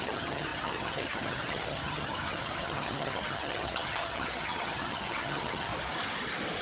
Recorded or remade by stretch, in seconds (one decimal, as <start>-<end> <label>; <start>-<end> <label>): 0.0-5.7 remade; 5.7-6.6 recorded